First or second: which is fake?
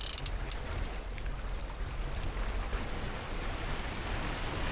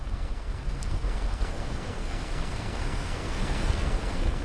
second